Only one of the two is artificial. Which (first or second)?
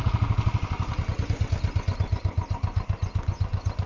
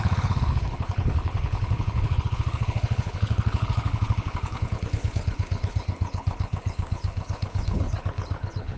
second